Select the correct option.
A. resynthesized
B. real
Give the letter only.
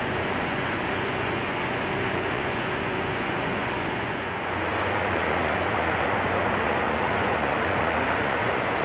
A